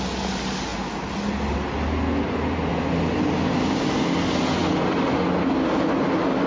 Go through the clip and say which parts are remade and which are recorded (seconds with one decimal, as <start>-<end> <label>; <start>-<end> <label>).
0.0-6.5 recorded